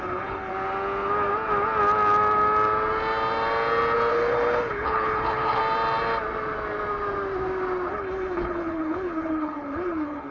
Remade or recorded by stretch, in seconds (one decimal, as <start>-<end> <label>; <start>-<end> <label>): 0.0-0.5 remade; 0.5-4.1 recorded; 4.1-5.6 remade; 5.6-7.9 recorded; 7.9-10.3 remade